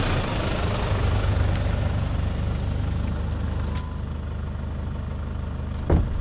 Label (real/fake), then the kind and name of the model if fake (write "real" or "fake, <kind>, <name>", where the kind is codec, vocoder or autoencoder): real